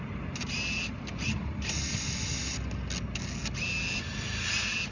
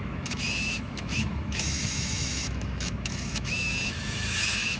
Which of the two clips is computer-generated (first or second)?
second